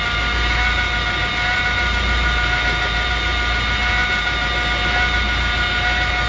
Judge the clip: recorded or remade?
recorded